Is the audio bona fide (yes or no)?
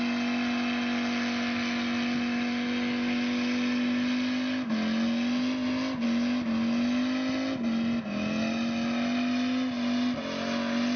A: yes